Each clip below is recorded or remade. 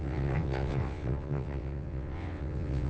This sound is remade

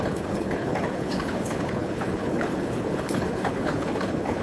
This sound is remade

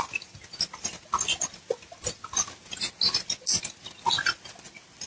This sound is recorded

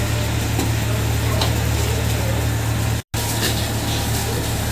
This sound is recorded